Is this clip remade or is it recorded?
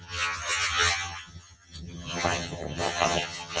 remade